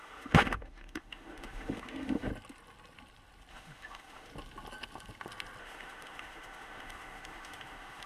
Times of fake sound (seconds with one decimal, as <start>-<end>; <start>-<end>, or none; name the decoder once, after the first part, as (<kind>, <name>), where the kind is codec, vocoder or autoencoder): 0.0-2.3 (autoencoder, DAC-VAE); 3.5-4.3; 5.6-8.1